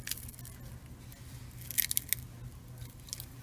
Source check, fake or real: real